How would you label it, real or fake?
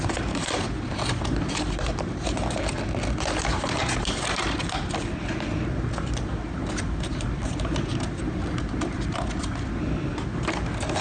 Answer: real